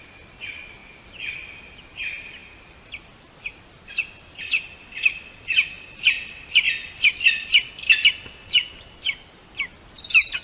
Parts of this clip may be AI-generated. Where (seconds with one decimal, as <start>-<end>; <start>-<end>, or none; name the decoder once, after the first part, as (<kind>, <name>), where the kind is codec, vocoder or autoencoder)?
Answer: 0.8-1.8 (vocoder, BigVGAN v2); 2.4-5.7